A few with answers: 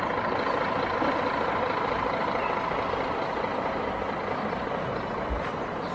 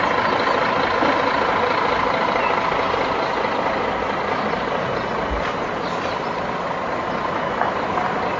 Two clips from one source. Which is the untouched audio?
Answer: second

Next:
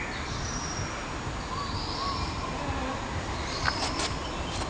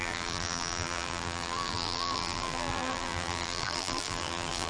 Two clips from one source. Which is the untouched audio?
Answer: first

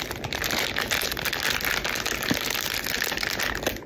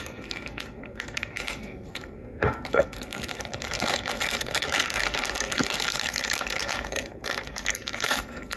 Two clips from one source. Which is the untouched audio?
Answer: first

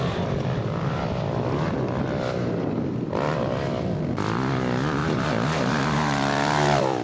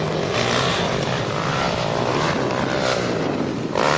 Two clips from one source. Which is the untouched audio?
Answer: second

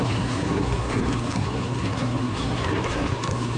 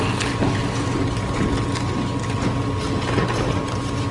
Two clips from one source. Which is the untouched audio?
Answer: second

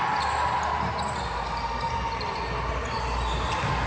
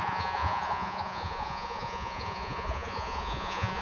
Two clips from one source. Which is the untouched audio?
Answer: first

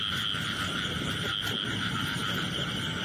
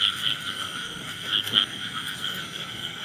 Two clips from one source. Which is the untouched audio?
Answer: first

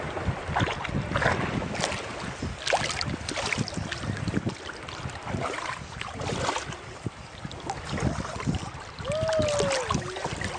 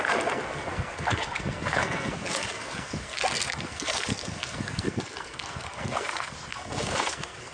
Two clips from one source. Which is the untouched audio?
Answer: first